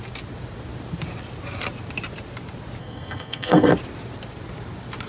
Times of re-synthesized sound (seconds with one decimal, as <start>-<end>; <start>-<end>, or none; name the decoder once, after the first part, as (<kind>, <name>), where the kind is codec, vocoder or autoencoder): 2.8-3.7 (codec, SNAC)